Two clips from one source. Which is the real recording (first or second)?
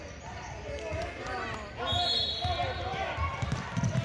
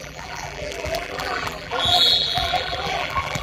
first